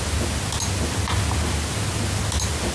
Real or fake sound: real